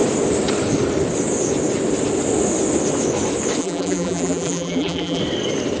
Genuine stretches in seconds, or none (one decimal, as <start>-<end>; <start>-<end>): 0.0-3.6; 5.2-5.8